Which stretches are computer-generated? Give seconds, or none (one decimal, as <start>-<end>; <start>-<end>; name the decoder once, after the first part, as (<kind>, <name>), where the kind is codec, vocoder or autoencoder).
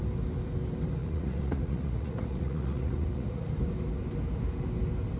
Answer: 1.0-3.5 (vocoder, Vocos)